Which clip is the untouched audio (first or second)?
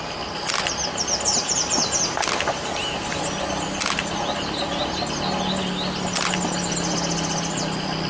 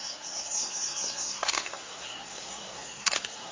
first